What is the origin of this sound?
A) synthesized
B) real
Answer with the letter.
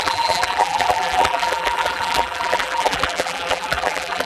A